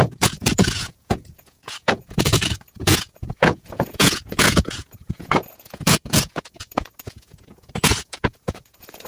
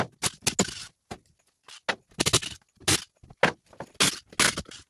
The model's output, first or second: first